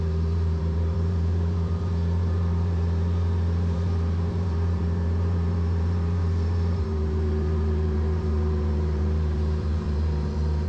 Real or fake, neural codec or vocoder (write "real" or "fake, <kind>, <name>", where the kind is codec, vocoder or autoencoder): fake, vocoder, BigVGAN v2